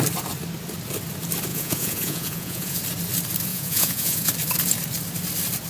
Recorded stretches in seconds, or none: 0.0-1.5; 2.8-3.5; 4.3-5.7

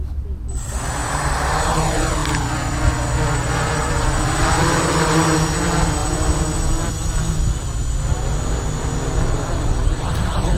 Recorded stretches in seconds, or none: 0.0-1.0; 1.7-10.6